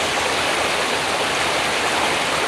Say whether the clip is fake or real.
real